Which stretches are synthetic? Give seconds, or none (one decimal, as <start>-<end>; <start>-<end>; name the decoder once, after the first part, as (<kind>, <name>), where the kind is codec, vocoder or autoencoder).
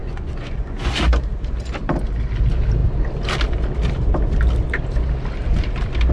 0.0-0.9 (vocoder, Vocos)